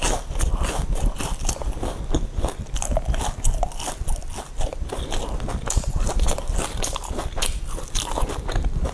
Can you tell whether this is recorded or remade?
recorded